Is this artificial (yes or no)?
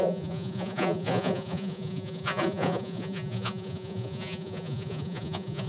yes